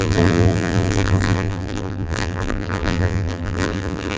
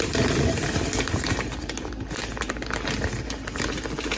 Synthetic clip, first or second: first